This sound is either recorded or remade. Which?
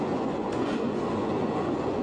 remade